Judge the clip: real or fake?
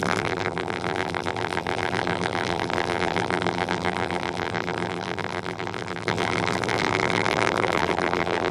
fake